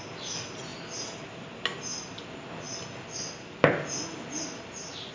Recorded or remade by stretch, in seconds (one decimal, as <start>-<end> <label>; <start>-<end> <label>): 0.0-5.1 recorded